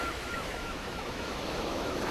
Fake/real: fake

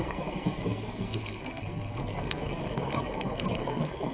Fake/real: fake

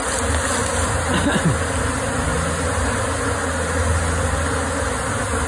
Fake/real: real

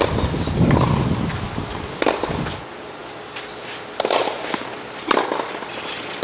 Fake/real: real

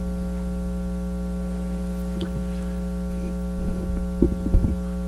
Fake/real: real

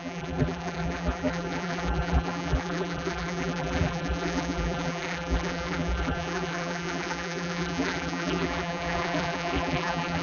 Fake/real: fake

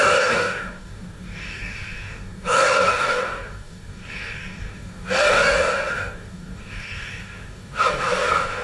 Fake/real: fake